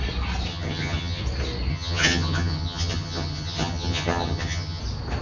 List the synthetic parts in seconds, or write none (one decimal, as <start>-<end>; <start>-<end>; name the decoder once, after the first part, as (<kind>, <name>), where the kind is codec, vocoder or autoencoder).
0.5-1.2 (vocoder, HiFi-GAN); 1.7-4.8